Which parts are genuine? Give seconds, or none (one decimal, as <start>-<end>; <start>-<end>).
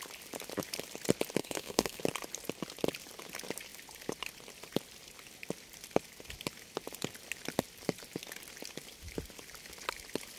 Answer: 0.0-1.4; 2.0-10.4